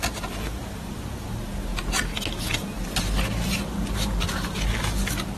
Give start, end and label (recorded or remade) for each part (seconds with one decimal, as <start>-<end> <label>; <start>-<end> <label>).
0.0-5.4 recorded